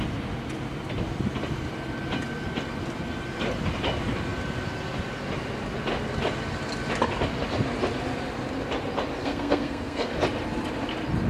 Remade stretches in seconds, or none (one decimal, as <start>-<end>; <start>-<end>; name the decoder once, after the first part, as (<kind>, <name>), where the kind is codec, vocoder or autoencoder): 9.2-10.1 (codec, SNAC)